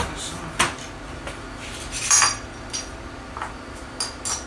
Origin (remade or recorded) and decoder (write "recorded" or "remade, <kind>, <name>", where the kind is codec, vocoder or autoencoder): recorded